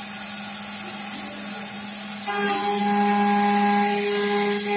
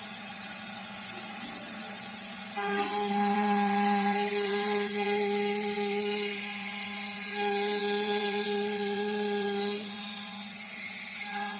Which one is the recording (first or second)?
first